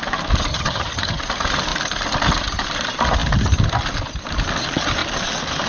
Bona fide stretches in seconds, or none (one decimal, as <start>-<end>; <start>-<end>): 0.0-0.5; 1.2-5.7